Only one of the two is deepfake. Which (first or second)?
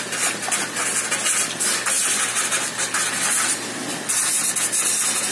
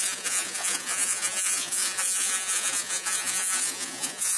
second